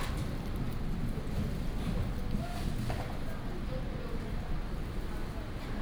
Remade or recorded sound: recorded